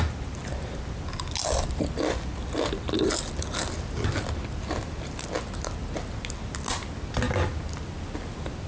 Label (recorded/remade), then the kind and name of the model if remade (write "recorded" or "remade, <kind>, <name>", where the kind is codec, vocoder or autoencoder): recorded